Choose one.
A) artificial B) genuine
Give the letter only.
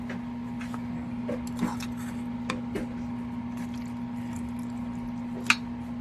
B